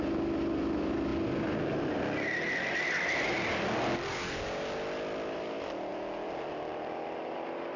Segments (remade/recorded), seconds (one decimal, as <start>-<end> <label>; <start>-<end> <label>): 0.0-7.8 recorded